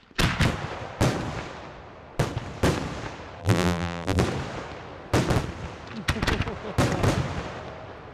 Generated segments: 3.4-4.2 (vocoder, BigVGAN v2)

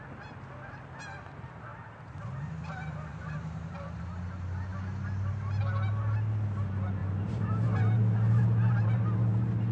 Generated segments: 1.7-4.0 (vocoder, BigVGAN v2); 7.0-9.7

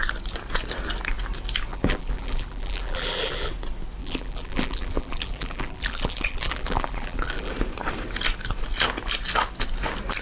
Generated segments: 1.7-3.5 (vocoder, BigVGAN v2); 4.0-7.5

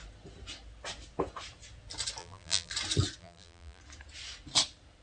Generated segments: 2.2-2.7 (vocoder, BigVGAN v2); 3.2-3.8

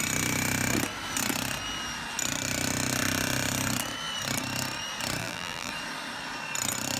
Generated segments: 5.2-5.7 (vocoder, BigVGAN v2)